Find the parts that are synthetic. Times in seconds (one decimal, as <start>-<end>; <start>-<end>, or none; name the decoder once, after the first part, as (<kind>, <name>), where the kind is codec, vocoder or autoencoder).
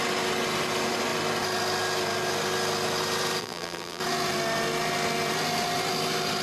3.4-4.0 (vocoder, BigVGAN v2)